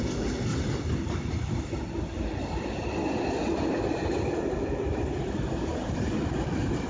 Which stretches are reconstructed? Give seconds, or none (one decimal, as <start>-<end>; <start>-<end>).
0.5-4.3; 5.7-6.9